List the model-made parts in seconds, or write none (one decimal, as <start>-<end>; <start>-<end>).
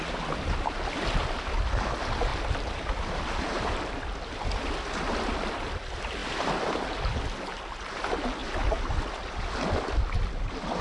none